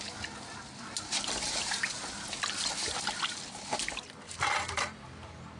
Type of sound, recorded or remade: recorded